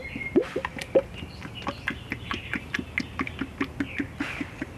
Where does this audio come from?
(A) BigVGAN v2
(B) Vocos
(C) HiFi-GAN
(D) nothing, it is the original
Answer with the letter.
D